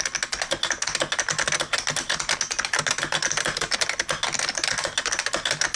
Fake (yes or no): no